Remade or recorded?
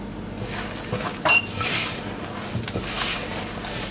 recorded